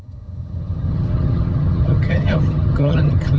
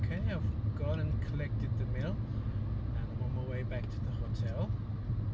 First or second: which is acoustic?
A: second